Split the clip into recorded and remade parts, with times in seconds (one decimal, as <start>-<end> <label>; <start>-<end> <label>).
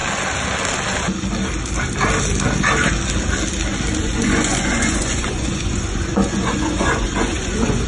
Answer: 0.0-4.0 recorded; 4.0-7.9 remade